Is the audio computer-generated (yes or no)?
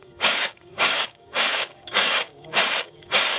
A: yes